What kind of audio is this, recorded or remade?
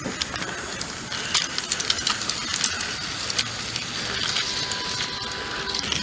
recorded